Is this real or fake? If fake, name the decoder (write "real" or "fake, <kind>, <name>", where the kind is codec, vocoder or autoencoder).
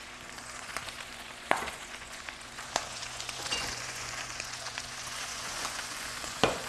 fake, vocoder, Vocos